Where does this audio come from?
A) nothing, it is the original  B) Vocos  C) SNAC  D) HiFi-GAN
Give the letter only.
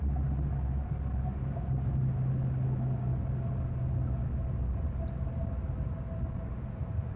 A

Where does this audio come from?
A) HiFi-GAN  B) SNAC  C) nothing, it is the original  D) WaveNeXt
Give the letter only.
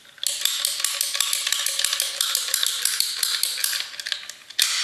C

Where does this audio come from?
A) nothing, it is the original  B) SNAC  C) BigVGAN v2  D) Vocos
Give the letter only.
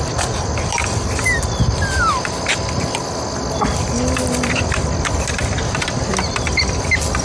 A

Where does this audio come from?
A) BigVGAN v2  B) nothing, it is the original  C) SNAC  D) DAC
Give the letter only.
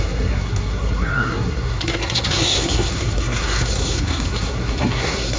C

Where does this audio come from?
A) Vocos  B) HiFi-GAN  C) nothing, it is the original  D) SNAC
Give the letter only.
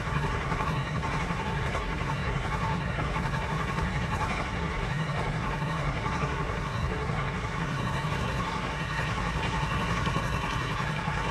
D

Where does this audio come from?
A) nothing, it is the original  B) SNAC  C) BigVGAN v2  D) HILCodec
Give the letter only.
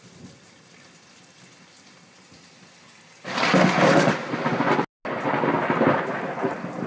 A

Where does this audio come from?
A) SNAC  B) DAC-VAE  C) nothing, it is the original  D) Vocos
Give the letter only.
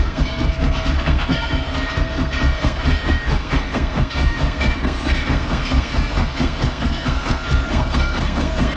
A